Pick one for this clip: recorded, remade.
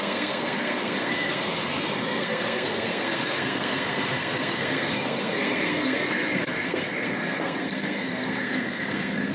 remade